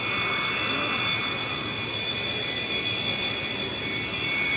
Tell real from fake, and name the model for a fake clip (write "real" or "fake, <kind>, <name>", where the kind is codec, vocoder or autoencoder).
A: real